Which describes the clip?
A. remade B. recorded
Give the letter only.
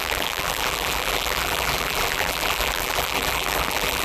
A